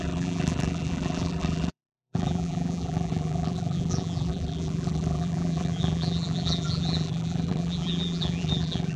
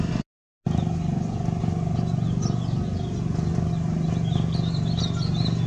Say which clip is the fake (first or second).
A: first